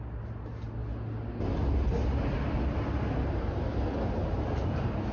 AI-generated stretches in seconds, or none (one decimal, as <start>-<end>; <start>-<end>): none